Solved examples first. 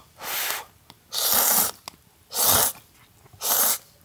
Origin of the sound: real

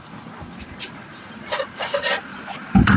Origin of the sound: fake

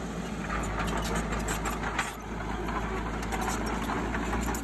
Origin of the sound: real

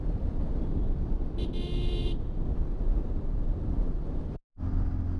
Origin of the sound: real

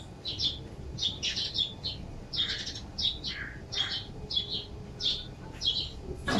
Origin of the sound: real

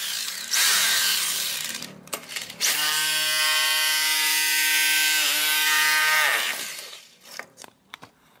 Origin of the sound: fake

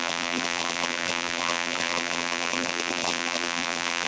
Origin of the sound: fake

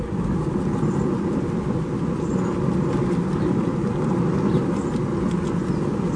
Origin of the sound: fake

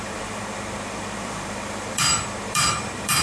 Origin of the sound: fake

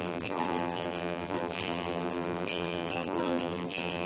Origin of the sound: fake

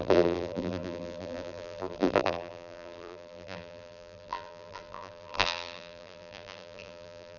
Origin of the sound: fake